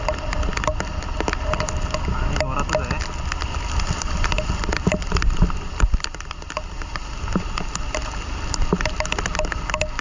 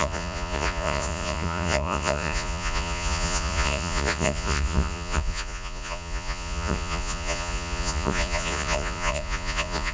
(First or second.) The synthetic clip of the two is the second